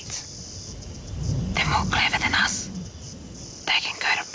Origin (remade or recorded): recorded